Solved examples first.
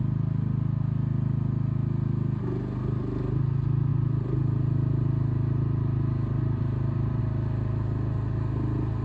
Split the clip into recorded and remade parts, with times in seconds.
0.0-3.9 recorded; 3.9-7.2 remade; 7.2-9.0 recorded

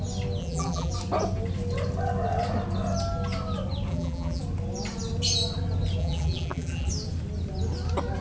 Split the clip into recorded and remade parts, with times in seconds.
0.0-0.4 recorded; 0.4-0.9 remade; 0.9-3.9 recorded; 3.9-4.4 remade; 4.4-6.0 recorded; 6.0-6.9 remade; 6.9-8.2 recorded

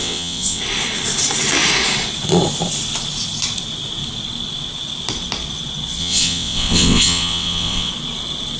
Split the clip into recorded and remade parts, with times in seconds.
0.0-0.6 remade; 0.6-6.0 recorded; 6.0-7.9 remade; 7.9-8.6 recorded

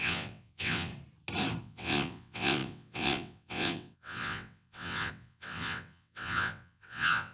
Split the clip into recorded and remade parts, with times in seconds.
0.0-0.9 remade; 0.9-1.6 recorded; 1.6-7.3 remade

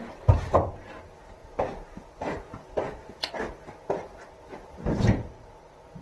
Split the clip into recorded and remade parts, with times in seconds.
0.0-1.4 recorded; 1.4-5.0 remade; 5.0-6.0 recorded

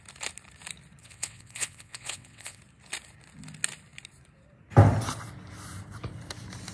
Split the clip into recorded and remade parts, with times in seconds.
0.0-1.0 recorded; 1.0-2.6 remade; 2.6-6.7 recorded

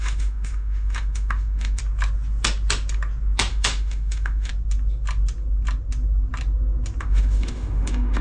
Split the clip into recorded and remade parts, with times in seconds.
0.0-1.8 remade; 1.8-3.5 recorded; 3.5-4.5 remade; 4.5-7.0 recorded; 7.0-8.2 remade

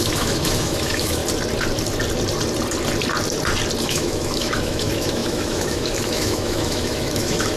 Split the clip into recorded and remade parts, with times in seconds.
0.0-1.2 remade; 1.2-3.8 recorded; 3.8-7.6 remade